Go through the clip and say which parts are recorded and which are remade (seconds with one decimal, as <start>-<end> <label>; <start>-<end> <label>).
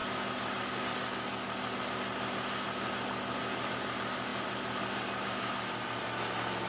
0.0-6.7 recorded